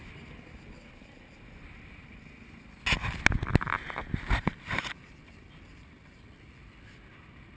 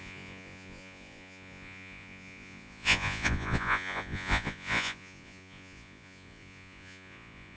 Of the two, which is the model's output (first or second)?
second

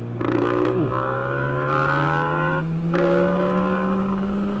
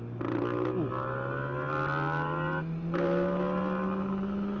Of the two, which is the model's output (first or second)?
first